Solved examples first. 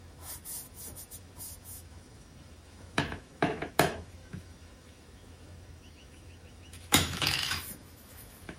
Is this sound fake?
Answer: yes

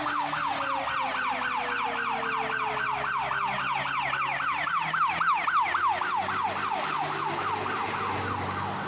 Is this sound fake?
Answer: no